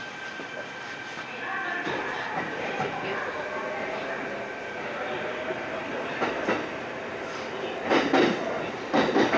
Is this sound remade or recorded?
recorded